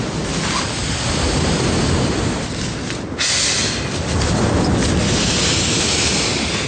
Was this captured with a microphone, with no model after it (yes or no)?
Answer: yes